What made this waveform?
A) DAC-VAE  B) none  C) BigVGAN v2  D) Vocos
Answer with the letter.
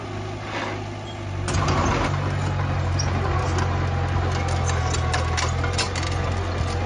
B